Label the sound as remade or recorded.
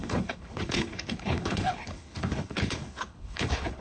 remade